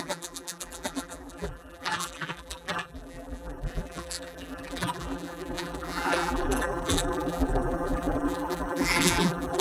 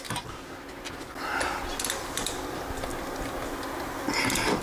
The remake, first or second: first